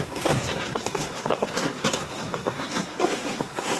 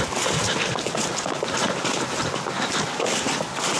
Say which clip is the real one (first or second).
second